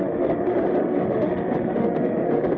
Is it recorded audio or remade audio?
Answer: remade